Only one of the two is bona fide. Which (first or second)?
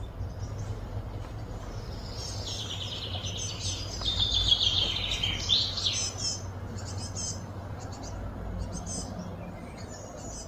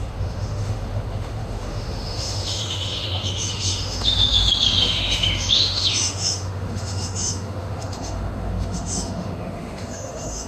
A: first